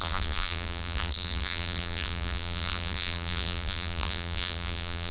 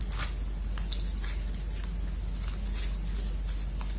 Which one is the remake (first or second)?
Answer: first